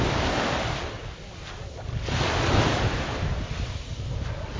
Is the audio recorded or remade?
recorded